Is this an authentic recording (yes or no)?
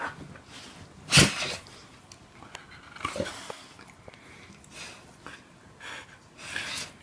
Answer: yes